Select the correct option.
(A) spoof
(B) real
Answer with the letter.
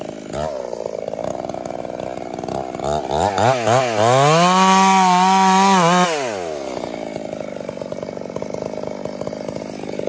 B